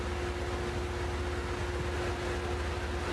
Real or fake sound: real